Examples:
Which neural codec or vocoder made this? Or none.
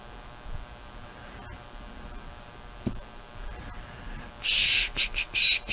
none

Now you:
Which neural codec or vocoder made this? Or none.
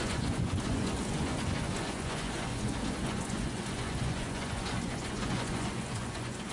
vocoder, Vocos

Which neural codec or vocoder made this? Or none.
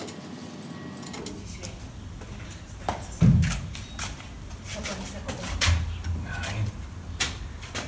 none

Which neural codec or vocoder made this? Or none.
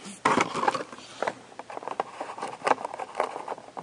none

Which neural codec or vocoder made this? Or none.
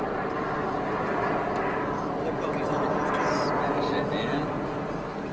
none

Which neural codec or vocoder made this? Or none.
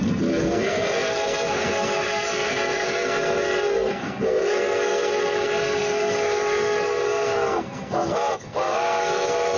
codec, SNAC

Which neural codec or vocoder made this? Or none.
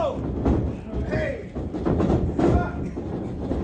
none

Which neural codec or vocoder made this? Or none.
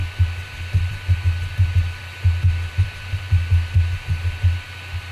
none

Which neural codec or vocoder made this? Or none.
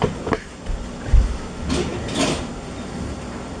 none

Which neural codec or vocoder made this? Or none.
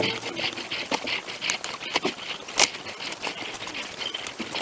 none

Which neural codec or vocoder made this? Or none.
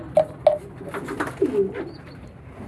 none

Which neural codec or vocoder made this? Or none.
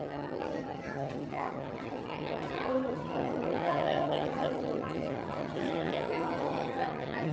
vocoder, HiFi-GAN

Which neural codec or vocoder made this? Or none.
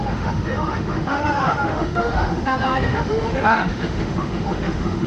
autoencoder, DAC-VAE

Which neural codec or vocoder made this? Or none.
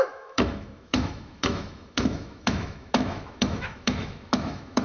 autoencoder, DAC-VAE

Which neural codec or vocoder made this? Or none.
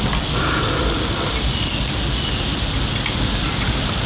none